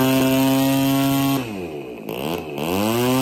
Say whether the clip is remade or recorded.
recorded